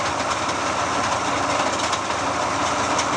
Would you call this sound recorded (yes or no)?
yes